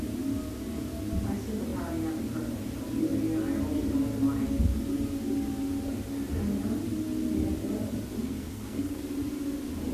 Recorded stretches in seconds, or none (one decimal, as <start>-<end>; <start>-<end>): 0.0-8.2; 9.0-9.9